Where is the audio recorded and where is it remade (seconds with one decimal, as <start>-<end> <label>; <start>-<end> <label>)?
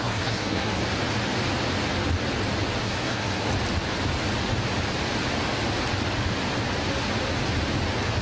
0.0-0.8 remade; 0.8-2.8 recorded; 2.8-3.5 remade; 3.5-8.2 recorded